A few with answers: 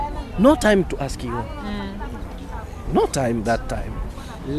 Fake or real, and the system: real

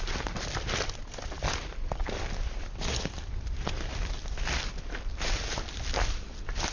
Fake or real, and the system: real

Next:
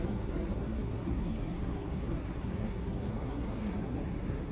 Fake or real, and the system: fake, codec, SNAC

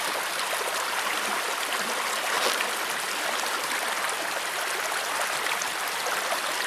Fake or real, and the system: real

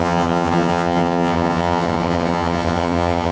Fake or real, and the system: fake, vocoder, HiFi-GAN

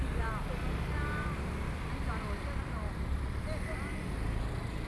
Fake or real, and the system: real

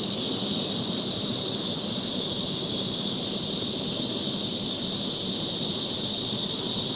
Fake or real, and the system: real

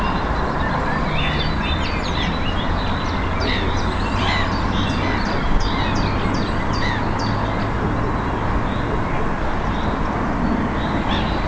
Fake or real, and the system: real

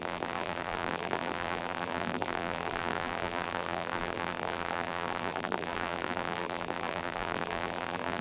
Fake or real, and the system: fake, vocoder, BigVGAN v2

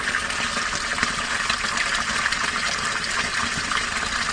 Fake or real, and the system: real